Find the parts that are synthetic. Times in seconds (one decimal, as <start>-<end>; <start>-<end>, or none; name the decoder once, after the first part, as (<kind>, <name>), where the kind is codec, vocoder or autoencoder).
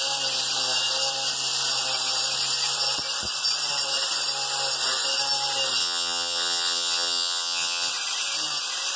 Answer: 5.8-7.9 (vocoder, WaveNeXt)